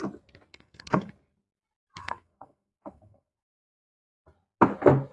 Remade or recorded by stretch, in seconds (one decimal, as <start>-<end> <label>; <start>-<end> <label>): 0.0-0.5 recorded; 0.5-1.1 remade; 1.1-2.0 recorded; 2.0-3.8 remade; 3.8-5.1 recorded